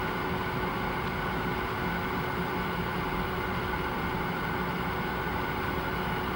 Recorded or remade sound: recorded